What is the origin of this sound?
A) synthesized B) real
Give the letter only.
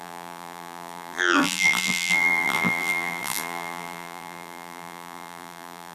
A